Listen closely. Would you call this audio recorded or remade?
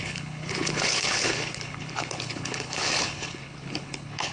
remade